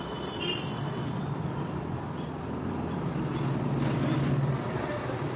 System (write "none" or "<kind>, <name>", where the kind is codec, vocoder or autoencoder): vocoder, BigVGAN v2